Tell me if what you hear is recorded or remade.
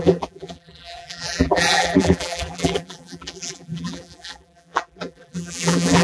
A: remade